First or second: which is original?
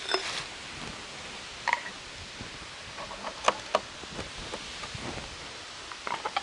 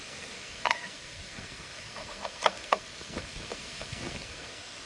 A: first